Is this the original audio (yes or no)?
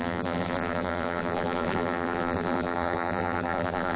no